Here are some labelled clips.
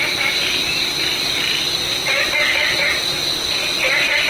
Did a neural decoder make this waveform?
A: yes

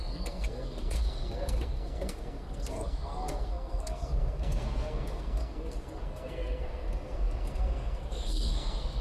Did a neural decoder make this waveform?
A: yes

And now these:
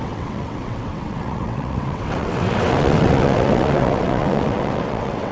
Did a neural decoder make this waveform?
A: yes